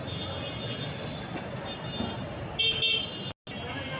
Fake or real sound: real